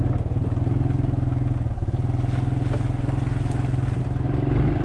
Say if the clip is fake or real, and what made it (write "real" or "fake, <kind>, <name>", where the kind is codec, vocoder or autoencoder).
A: real